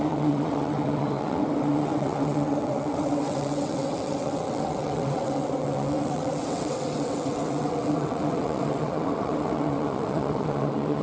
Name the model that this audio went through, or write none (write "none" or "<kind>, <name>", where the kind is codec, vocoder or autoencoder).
vocoder, WaveNeXt